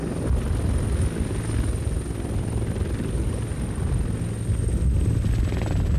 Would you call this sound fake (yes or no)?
no